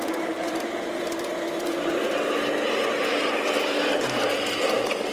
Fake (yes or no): no